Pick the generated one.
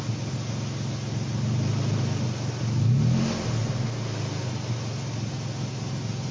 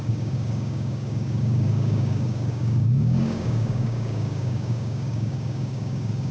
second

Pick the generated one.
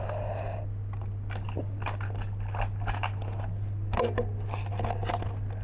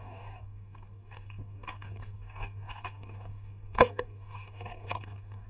second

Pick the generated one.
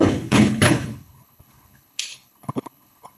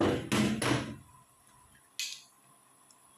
first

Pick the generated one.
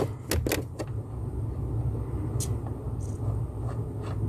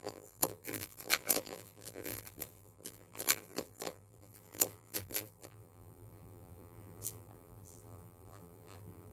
second